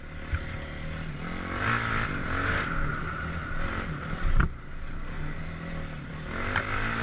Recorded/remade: recorded